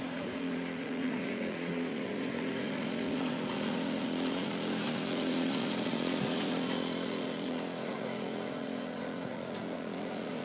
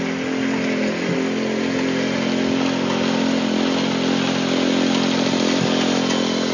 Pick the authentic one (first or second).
second